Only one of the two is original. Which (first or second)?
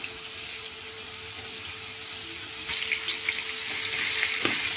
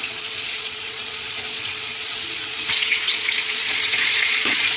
first